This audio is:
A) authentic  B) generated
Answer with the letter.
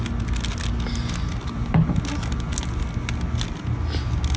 A